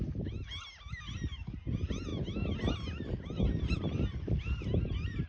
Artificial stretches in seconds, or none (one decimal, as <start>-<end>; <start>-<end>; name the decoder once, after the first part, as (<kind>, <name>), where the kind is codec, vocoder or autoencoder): none